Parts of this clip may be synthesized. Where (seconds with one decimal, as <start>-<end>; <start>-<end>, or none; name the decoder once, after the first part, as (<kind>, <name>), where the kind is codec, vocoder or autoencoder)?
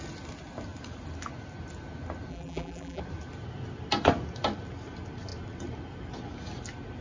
2.3-3.0 (vocoder, BigVGAN v2)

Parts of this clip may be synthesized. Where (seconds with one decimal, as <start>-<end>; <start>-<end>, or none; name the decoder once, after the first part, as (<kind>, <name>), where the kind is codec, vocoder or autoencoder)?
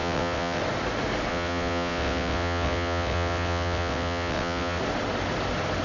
0.0-0.6 (vocoder, WaveNeXt); 1.3-4.8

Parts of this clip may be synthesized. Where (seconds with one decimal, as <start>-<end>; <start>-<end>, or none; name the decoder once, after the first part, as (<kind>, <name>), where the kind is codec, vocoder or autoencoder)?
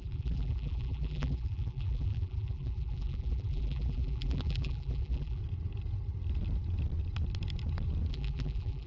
0.0-5.4 (vocoder, BigVGAN v2); 8.1-8.9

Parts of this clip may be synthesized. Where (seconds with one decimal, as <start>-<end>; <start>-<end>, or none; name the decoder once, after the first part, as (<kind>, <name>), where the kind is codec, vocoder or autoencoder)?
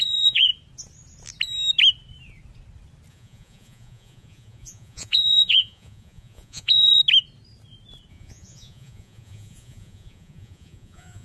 0.0-0.5 (vocoder, Vocos); 3.1-7.0; 8.1-11.2